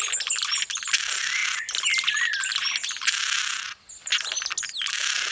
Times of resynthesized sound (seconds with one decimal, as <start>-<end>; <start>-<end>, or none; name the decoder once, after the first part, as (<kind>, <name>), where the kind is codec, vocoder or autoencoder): none